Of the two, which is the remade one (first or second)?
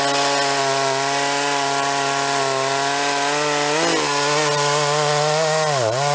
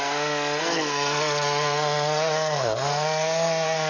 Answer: second